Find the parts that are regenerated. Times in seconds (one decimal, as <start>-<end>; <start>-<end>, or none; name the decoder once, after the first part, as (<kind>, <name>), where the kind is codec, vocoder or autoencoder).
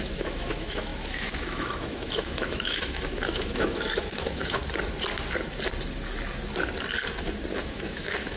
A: 0.0-4.6 (autoencoder, DAC-VAE); 7.6-8.4